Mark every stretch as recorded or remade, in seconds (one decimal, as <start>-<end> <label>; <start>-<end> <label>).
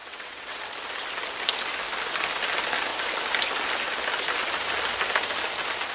0.0-0.6 remade; 0.6-5.9 recorded